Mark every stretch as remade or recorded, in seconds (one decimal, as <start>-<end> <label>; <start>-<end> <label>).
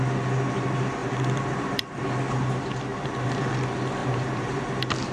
0.0-1.0 recorded; 1.0-2.0 remade; 2.0-2.9 recorded; 2.9-3.5 remade; 3.5-4.0 recorded; 4.0-4.6 remade; 4.6-5.1 recorded